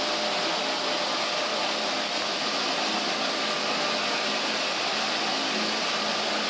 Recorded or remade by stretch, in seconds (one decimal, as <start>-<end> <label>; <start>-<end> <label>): 0.0-6.5 recorded